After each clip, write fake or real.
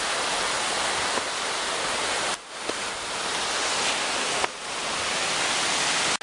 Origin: real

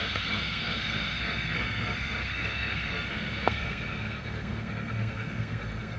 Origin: fake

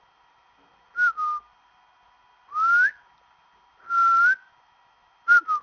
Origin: real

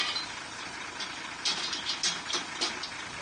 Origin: real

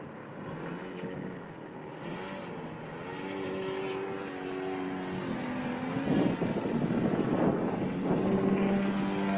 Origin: real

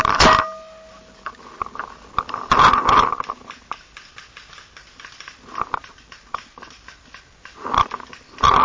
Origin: real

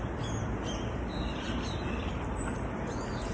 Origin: real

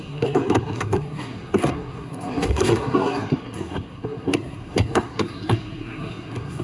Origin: fake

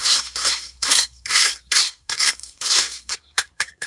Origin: fake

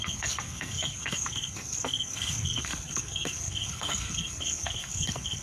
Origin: fake